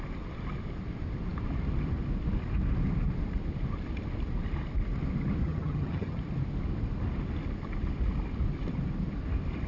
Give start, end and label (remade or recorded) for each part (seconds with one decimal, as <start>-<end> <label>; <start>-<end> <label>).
0.0-5.4 recorded; 5.4-6.2 remade; 6.2-9.7 recorded